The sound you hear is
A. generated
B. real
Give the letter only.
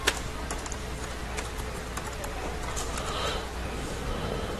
B